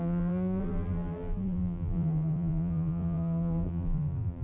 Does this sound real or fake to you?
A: fake